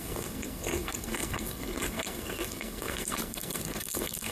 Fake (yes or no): yes